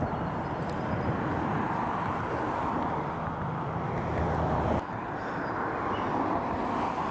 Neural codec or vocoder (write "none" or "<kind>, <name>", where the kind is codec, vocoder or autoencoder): none